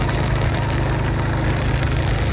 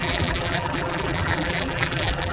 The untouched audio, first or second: first